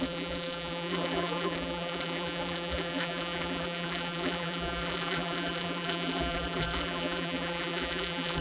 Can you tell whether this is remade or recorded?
remade